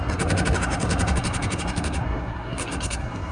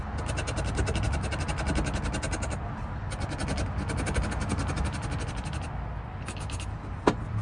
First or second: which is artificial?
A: first